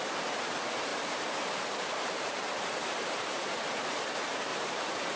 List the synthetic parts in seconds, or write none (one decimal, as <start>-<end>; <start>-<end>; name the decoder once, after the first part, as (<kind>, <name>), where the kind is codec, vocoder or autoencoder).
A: 0.9-3.5 (vocoder, BigVGAN v2); 4.5-5.2